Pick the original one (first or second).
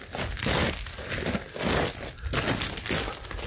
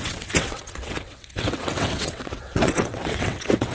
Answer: first